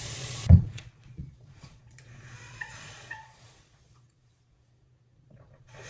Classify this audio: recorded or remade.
remade